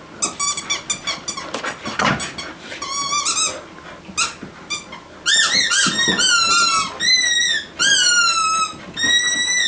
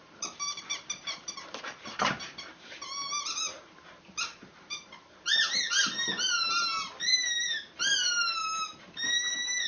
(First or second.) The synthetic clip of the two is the second